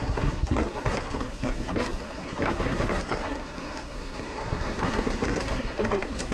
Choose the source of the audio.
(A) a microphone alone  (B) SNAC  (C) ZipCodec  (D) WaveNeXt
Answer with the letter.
B